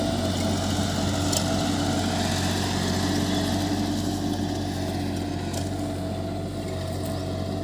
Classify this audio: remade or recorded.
recorded